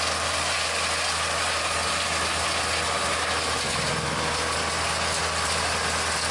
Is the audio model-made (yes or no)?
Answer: no